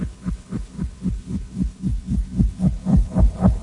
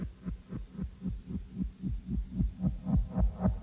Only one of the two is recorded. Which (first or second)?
second